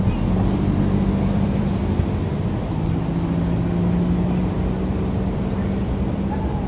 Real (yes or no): yes